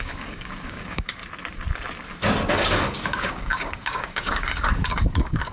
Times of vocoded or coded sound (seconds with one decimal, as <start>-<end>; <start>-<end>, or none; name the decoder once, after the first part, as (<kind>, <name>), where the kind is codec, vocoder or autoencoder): 0.0-1.2 (codec, DAC); 2.5-5.5

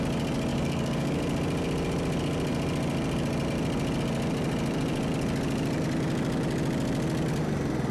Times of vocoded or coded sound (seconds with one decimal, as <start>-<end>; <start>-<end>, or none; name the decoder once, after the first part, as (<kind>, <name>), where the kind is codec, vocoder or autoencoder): 0.5-1.2 (codec, DAC)